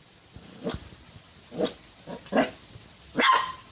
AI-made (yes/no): no